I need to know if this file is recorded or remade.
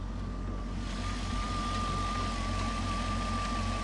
recorded